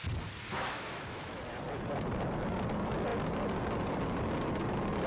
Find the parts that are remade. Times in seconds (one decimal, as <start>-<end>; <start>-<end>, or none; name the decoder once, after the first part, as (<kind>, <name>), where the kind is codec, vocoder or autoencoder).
0.5-1.4 (autoencoder, DAC-VAE)